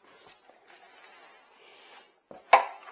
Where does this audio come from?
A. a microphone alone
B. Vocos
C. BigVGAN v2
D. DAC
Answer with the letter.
A